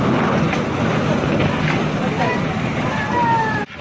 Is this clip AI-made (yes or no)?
no